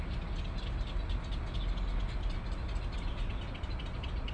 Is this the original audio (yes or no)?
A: yes